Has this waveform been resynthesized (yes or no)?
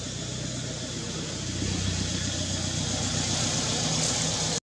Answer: no